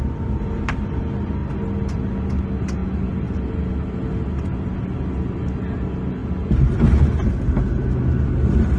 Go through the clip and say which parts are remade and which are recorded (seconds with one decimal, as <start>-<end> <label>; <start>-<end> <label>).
0.0-8.8 recorded